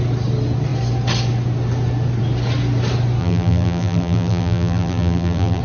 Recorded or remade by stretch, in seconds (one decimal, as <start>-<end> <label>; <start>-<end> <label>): 0.0-3.2 recorded; 3.2-5.6 remade